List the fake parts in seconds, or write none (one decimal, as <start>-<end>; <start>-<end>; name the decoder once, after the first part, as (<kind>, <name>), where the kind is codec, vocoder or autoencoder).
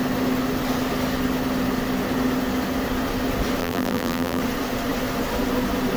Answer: 3.6-4.4 (vocoder, BigVGAN v2)